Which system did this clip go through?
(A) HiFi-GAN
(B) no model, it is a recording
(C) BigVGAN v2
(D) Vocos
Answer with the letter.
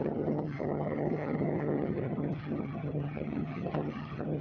A